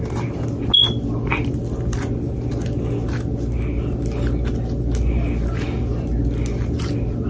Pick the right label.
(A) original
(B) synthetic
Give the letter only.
A